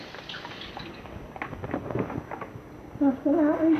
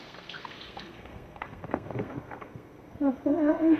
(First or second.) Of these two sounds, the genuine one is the first